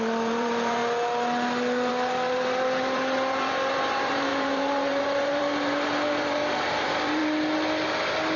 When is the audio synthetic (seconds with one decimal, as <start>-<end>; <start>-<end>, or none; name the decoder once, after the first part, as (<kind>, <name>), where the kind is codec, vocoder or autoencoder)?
0.0-0.8 (vocoder, BigVGAN v2); 1.9-7.2